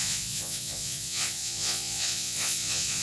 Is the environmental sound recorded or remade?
remade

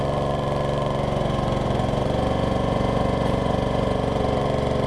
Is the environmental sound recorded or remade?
remade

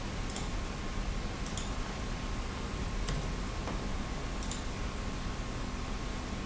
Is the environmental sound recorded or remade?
recorded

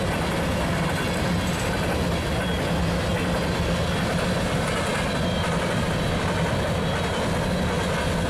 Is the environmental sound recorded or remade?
recorded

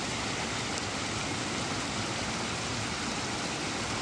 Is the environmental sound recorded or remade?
recorded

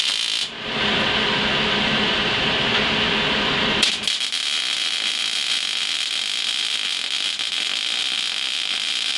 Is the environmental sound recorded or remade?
recorded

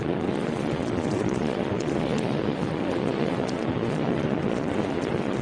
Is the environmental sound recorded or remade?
remade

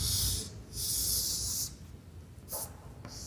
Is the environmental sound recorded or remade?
recorded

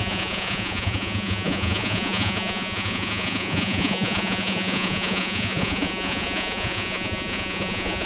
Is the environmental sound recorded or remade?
remade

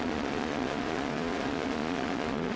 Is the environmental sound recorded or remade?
remade